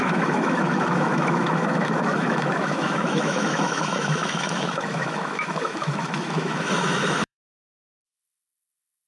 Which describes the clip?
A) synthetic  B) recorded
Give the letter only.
A